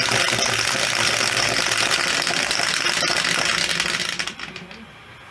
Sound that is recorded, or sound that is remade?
recorded